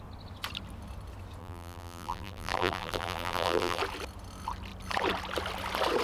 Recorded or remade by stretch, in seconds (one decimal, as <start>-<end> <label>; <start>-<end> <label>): 0.0-1.4 recorded; 1.4-3.8 remade; 3.8-6.0 recorded